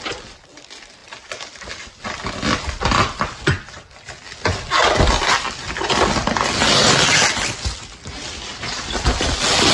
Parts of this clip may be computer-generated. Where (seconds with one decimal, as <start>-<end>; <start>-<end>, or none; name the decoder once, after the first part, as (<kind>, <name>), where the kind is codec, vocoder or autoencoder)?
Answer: none